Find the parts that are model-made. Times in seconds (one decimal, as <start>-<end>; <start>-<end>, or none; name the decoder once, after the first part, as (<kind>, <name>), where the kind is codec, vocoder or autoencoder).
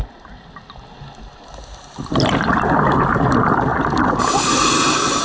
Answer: none